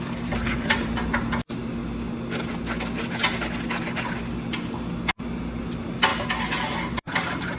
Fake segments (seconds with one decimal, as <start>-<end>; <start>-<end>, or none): 0.0-1.8; 5.6-7.6